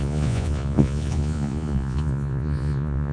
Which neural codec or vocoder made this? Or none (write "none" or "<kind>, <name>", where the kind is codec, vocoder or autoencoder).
vocoder, Vocos